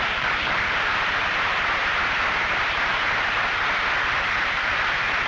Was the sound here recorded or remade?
recorded